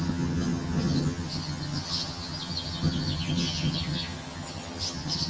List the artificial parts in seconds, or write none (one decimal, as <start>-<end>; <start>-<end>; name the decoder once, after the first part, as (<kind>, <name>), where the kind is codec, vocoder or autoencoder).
0.0-5.3 (vocoder, HiFi-GAN)